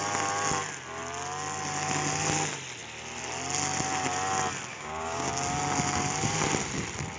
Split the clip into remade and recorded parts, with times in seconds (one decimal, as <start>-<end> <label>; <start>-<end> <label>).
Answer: 0.0-4.7 recorded; 4.7-5.3 remade; 5.3-7.2 recorded